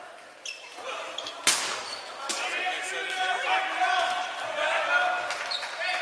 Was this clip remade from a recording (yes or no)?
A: no